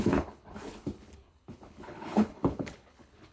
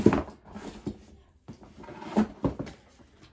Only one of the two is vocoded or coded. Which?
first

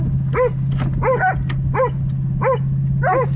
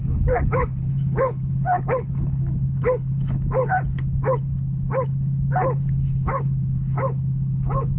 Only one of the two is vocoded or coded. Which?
second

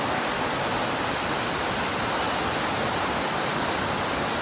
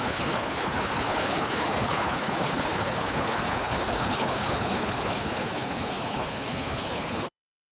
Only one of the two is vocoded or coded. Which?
second